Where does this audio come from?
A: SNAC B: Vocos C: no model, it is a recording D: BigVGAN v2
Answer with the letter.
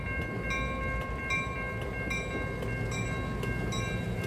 C